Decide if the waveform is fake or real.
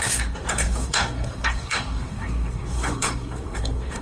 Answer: fake